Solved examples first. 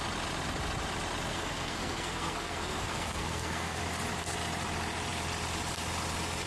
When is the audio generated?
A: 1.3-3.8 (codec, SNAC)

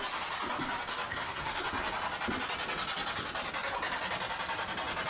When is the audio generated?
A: 1.1-1.6 (codec, SNAC)

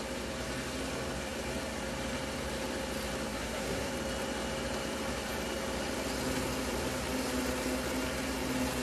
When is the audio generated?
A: 3.3-3.9 (codec, SNAC)

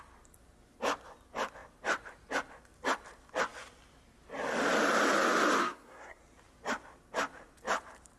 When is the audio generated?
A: 5.6-6.2 (codec, SNAC)

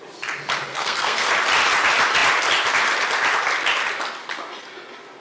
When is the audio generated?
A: 0.7-1.3 (codec, SNAC)

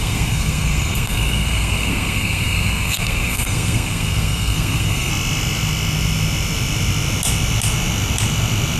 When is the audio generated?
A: 0.0-5.1 (codec, SNAC)

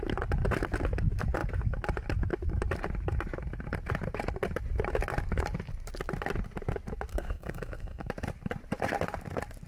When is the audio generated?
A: 7.1-8.1 (codec, SNAC)